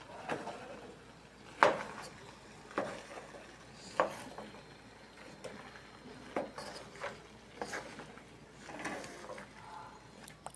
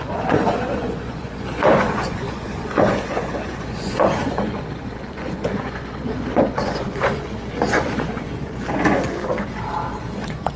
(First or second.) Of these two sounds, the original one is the first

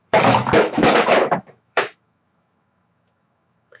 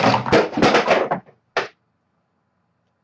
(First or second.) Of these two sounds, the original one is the second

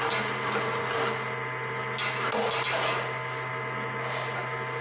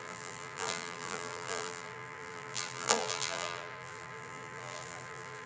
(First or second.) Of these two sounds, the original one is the first